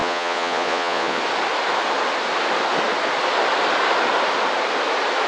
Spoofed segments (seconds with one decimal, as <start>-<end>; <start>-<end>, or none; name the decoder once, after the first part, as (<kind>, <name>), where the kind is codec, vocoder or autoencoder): 0.0-1.2 (vocoder, Vocos)